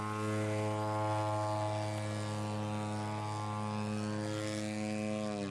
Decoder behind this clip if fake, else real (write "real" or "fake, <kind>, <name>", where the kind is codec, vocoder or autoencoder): real